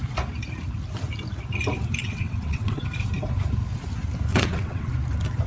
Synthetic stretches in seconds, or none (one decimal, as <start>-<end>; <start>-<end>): 2.0-2.8; 4.3-4.9